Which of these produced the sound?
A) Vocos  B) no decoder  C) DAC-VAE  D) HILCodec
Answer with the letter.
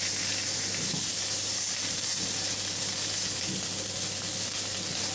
B